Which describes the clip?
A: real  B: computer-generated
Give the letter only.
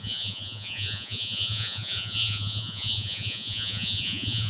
B